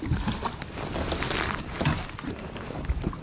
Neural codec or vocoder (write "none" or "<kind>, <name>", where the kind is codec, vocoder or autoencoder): none